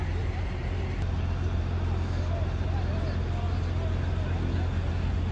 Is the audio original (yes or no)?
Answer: yes